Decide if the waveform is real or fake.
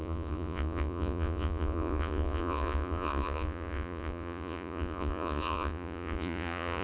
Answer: fake